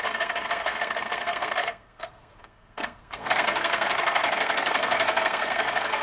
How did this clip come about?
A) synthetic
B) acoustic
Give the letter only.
A